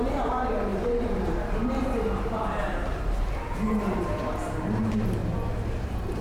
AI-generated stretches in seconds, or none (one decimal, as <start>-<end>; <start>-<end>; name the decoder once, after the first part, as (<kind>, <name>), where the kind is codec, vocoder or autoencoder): 0.0-5.2 (vocoder, BigVGAN v2); 5.8-6.2